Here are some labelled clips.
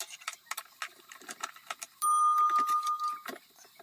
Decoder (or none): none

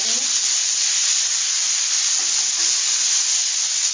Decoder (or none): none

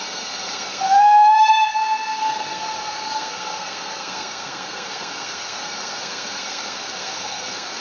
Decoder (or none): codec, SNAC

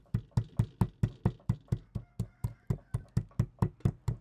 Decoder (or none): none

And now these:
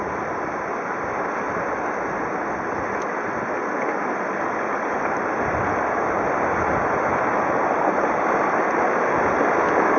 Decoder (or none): none